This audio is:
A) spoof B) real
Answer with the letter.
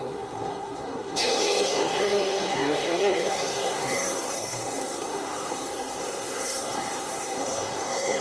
A